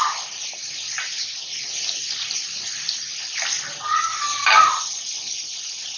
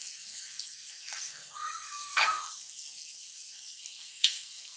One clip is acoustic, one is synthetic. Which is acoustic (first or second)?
first